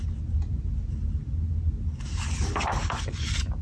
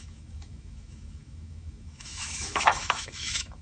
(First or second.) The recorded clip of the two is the first